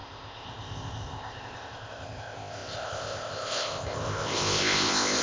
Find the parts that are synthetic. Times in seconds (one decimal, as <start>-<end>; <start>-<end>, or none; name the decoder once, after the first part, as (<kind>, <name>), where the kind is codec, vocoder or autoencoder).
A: 0.0-5.2 (codec, ZipCodec)